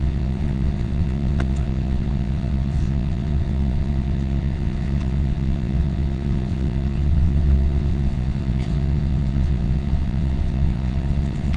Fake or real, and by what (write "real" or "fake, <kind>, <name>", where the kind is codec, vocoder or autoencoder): fake, vocoder, WaveNeXt